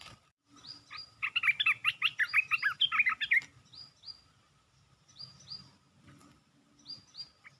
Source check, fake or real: real